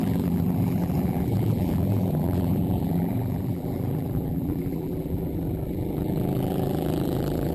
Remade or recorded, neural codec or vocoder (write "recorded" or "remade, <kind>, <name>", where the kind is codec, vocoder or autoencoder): remade, vocoder, BigVGAN v2